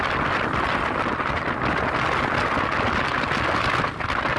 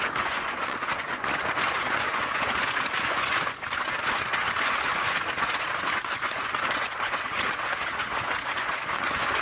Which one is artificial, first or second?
second